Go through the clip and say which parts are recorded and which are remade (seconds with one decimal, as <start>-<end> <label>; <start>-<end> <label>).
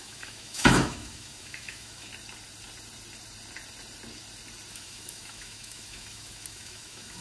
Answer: 0.0-2.1 remade; 2.1-4.7 recorded; 4.7-7.2 remade